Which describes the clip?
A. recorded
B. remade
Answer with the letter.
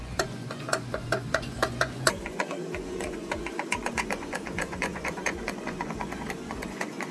B